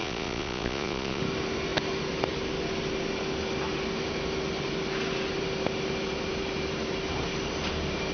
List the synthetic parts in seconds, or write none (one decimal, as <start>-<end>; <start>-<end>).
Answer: 0.0-1.2